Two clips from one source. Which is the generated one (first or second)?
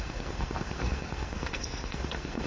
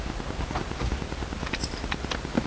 first